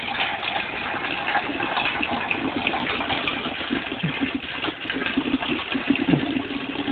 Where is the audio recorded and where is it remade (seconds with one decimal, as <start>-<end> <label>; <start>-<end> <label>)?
0.0-5.0 recorded; 5.0-6.9 remade

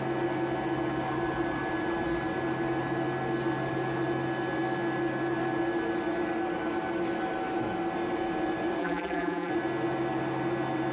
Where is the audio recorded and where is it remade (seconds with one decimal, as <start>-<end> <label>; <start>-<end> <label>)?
0.0-8.8 recorded; 8.8-9.5 remade; 9.5-10.9 recorded

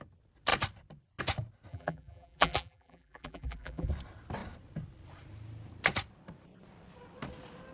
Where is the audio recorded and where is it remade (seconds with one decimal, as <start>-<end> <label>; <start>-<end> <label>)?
0.0-1.7 recorded; 1.7-3.9 remade; 3.9-7.7 recorded

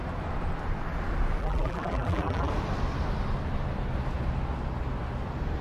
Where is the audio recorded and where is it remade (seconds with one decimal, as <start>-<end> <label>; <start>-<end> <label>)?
0.0-1.4 recorded; 1.4-2.5 remade; 2.5-5.6 recorded

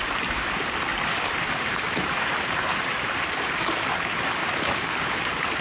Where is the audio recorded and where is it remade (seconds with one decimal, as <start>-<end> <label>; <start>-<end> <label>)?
0.0-0.9 recorded; 0.9-3.6 remade; 3.6-4.4 recorded; 4.4-5.6 remade

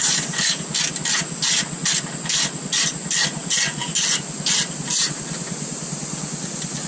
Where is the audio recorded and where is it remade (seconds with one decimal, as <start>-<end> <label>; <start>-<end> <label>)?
0.0-6.9 recorded